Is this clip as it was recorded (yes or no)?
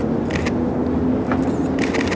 yes